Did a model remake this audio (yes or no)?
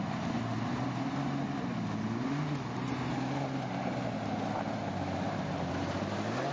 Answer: no